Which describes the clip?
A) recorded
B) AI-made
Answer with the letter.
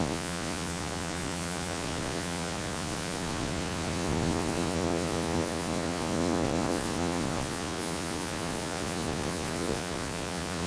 B